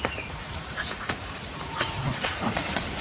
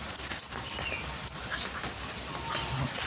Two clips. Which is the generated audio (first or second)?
first